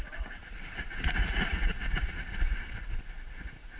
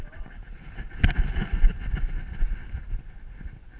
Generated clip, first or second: first